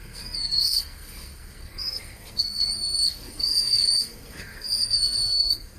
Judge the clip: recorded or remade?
remade